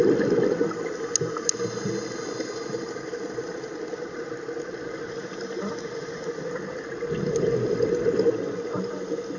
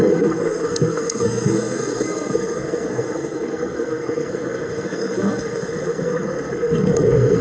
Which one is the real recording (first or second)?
first